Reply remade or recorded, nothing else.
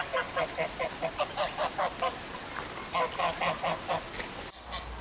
recorded